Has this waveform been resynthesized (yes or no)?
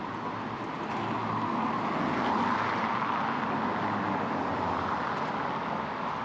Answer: no